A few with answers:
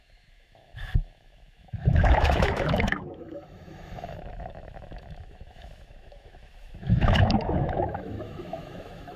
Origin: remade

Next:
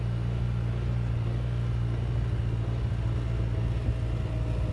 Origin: recorded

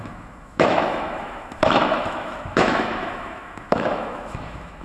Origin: remade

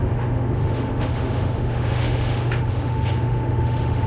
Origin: remade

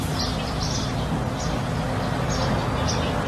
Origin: recorded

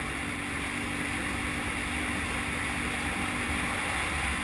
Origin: recorded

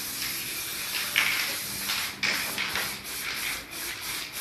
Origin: recorded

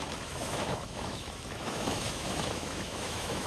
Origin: remade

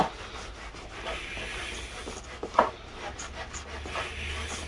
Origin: recorded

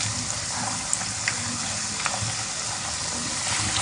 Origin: recorded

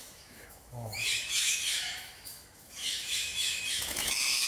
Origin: remade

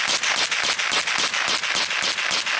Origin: recorded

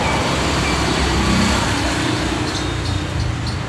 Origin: recorded